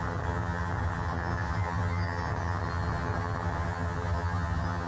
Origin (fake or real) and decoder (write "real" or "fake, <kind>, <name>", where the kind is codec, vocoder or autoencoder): fake, vocoder, HiFi-GAN